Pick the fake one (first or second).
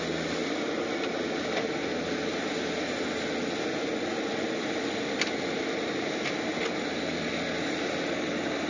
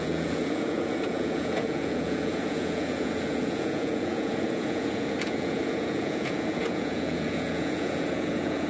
second